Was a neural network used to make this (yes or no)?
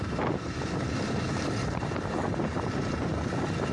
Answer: yes